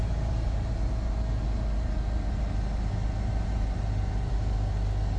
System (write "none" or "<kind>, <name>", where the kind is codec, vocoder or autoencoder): none